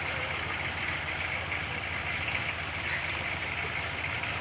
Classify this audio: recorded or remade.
recorded